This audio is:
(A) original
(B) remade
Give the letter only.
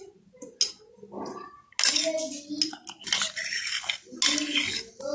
A